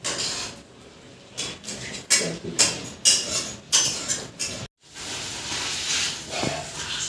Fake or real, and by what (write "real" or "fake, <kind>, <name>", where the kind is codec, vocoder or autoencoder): real